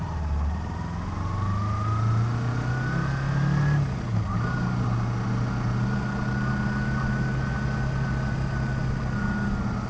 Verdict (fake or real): real